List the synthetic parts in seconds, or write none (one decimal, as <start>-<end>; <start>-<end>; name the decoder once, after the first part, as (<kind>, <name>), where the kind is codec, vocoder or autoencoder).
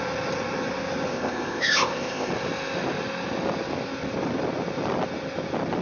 1.1-2.3 (codec, ZipCodec)